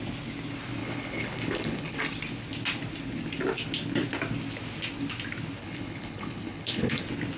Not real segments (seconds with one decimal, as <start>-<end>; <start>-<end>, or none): 0.8-2.0; 5.6-7.0